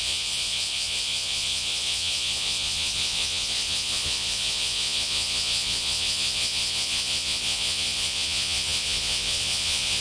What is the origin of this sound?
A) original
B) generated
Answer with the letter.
B